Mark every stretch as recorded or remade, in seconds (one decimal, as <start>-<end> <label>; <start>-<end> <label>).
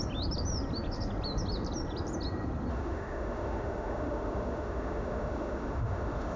0.0-2.7 recorded; 2.7-6.4 remade